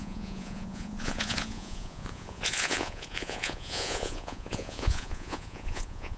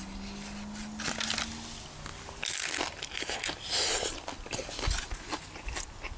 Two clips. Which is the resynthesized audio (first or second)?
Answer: first